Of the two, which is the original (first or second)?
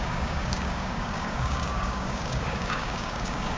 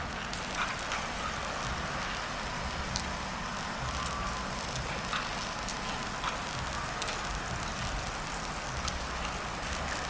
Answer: second